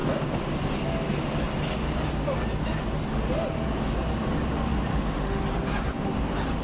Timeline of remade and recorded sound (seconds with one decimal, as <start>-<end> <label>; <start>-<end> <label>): 0.0-4.9 recorded; 4.9-5.4 remade; 5.4-6.6 recorded